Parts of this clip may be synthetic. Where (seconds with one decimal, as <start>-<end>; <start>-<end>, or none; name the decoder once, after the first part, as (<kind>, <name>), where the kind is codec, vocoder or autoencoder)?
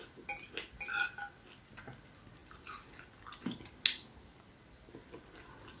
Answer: none